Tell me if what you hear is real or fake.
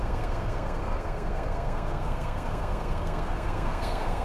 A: fake